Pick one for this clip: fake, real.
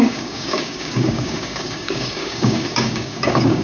fake